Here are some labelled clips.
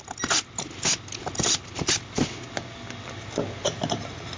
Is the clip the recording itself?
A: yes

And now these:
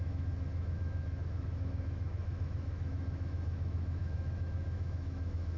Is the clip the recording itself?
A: no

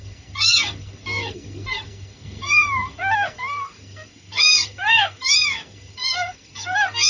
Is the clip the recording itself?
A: no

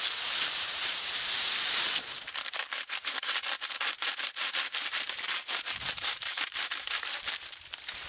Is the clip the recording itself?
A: no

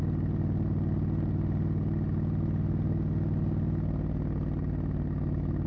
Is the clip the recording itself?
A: yes